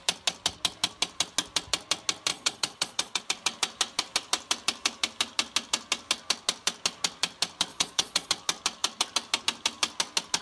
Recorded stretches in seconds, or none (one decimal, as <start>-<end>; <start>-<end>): 0.0-2.3; 3.2-7.7; 8.3-10.4